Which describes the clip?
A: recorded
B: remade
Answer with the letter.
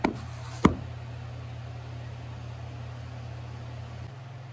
A